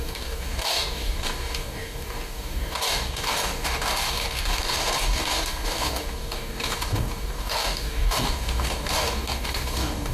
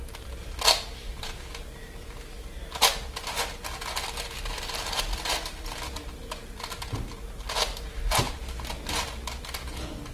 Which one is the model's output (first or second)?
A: first